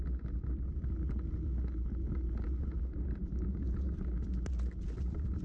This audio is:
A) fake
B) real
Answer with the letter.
B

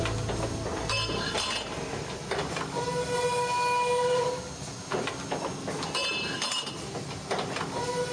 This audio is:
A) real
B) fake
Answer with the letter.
A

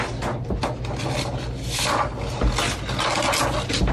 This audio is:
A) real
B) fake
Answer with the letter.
A